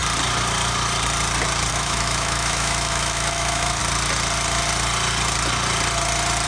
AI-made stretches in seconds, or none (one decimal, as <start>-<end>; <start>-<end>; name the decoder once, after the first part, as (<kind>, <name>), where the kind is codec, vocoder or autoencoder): 1.7-3.8 (autoencoder, DAC-VAE)